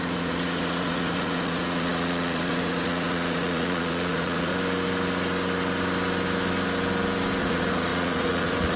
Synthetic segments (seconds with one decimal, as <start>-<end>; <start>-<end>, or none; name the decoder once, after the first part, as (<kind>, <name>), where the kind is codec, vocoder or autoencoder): 0.0-4.5 (vocoder, Vocos); 7.4-8.8